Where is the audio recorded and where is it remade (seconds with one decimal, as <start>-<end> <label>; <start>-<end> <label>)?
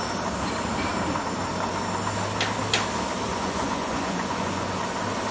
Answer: 0.0-3.3 recorded; 3.3-4.8 remade; 4.8-5.3 recorded